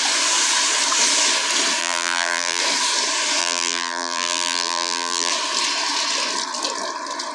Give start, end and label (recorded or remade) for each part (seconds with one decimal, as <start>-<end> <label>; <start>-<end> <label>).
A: 0.0-1.8 recorded; 1.8-2.6 remade; 2.6-3.4 recorded; 3.4-5.3 remade; 5.3-7.3 recorded